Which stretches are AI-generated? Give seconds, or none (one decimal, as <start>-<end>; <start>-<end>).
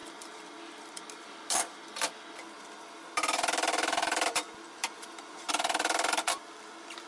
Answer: none